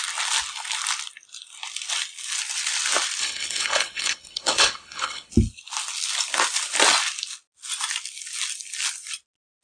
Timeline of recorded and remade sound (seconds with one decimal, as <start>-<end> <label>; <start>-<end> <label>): 0.0-3.2 recorded; 3.2-5.3 remade; 5.3-9.6 recorded

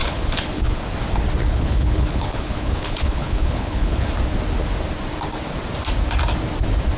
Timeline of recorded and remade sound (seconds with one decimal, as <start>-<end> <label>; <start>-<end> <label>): 0.0-0.8 remade; 0.8-1.4 recorded; 1.4-4.1 remade; 4.1-7.0 recorded